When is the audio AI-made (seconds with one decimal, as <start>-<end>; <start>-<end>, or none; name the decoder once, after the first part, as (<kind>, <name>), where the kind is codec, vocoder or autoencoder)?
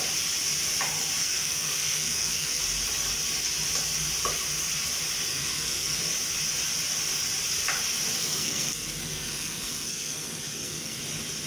1.2-2.6 (codec, SNAC); 5.3-6.0; 8.2-11.0